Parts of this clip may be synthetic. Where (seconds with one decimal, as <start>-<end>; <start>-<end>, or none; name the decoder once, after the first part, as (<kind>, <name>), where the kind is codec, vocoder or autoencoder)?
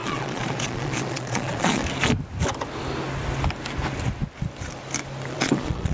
0.0-1.8 (vocoder, Vocos); 5.3-5.9